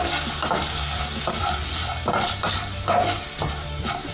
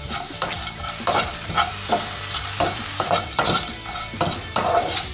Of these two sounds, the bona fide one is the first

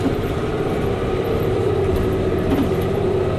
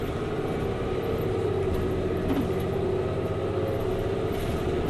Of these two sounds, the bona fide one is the second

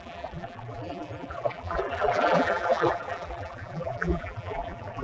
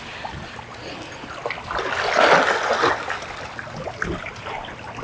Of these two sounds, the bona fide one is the second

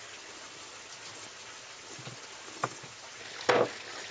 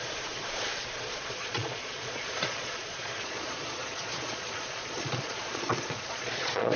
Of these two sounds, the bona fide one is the first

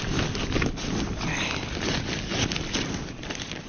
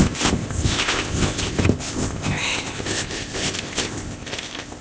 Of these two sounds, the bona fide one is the first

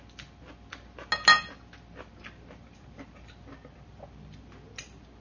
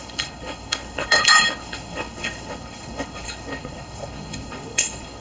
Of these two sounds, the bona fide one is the first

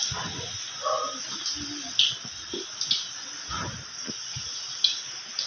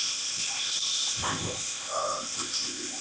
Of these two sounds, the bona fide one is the first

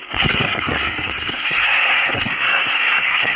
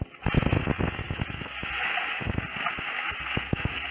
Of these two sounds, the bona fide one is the second